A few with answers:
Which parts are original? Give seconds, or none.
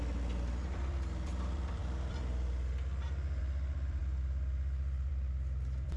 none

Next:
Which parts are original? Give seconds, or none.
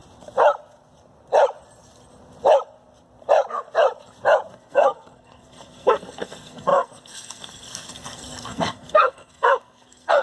0.0-4.5